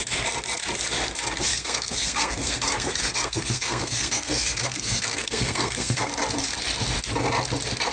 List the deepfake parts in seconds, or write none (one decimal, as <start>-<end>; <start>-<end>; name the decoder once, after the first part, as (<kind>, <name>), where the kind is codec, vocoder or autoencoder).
1.5-6.1 (codec, SNAC)